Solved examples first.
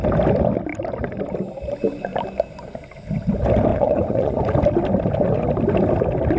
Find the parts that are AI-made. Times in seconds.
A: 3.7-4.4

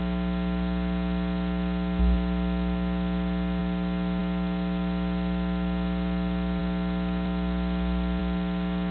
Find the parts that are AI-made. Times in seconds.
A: none

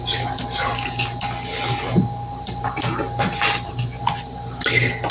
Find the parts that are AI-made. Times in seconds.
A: none